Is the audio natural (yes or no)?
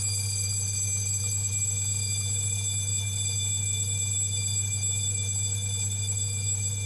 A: yes